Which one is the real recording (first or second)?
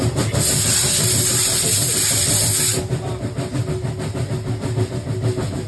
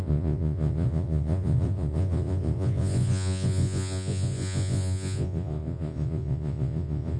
first